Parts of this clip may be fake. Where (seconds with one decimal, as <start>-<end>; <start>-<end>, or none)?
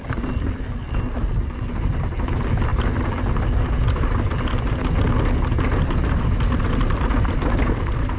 none